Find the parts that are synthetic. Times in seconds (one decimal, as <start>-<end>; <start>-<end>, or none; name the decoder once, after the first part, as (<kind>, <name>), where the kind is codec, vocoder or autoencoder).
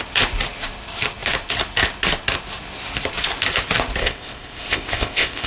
4.0-5.5 (codec, ZipCodec)